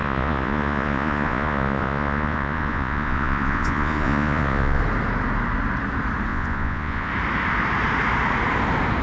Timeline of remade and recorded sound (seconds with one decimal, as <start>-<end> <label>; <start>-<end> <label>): 0.0-4.8 remade; 4.8-6.3 recorded; 6.3-7.1 remade; 7.1-9.0 recorded